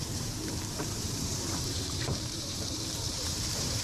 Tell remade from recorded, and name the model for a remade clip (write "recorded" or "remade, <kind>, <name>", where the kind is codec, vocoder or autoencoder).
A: remade, vocoder, BigVGAN v2